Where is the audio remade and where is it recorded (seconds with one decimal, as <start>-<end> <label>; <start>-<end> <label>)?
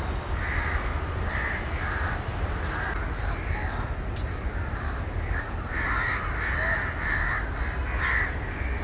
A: 0.0-8.8 recorded